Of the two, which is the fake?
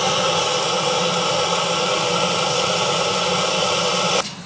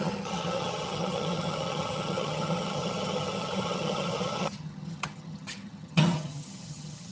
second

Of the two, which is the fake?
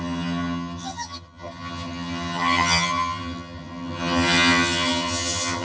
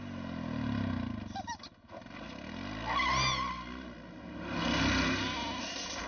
first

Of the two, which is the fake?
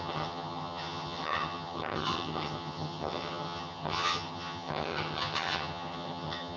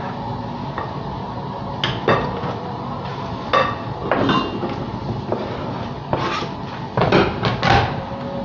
first